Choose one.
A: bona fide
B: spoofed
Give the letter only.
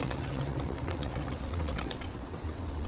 B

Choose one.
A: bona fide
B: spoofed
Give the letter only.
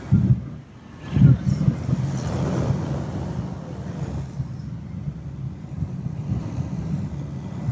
A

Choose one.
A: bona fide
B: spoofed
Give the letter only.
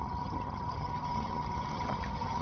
B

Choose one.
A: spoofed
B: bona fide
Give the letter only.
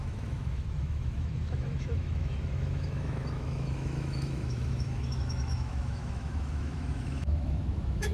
A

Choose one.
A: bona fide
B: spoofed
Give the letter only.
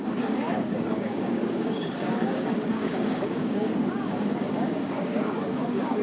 B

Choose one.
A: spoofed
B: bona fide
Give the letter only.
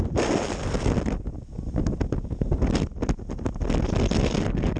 B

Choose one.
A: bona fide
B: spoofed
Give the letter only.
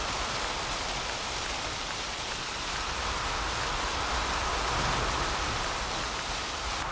A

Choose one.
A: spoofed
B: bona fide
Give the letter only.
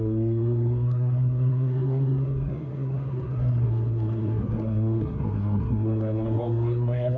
A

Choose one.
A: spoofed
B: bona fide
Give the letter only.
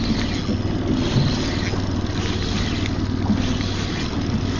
B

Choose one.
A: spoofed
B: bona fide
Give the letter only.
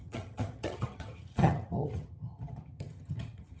A